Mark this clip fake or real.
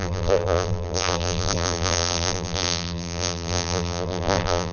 fake